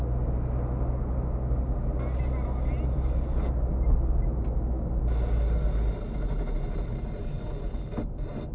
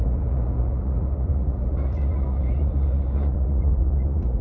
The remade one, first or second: second